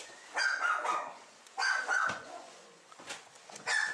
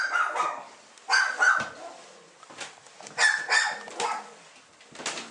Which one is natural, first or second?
second